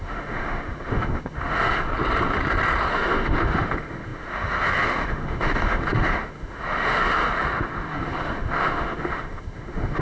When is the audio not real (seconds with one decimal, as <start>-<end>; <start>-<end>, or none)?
0.0-1.9; 2.9-10.0

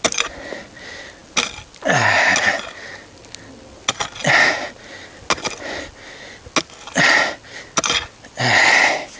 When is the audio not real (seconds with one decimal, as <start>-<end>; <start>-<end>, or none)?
none

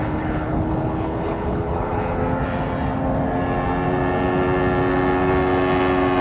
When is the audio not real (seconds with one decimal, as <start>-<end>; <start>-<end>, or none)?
0.0-2.2

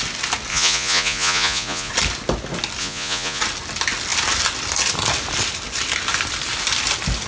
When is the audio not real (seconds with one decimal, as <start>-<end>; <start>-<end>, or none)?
0.5-1.9; 2.8-3.4

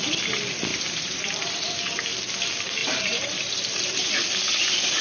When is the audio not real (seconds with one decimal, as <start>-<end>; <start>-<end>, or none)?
0.7-2.1; 2.8-3.4

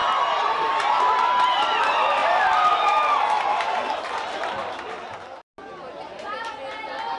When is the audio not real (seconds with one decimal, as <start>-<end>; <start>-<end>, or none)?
none

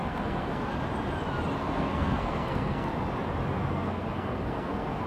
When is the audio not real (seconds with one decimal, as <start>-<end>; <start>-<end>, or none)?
0.0-0.7; 1.6-2.9; 3.6-5.1

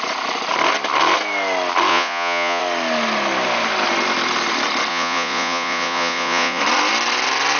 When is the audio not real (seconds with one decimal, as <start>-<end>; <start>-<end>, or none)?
1.9-2.6; 4.9-6.6